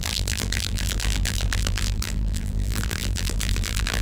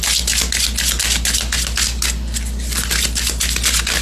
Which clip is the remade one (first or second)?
first